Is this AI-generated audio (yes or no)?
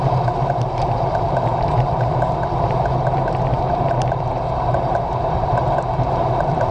yes